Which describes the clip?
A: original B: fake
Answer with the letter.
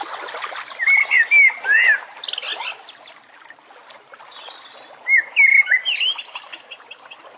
A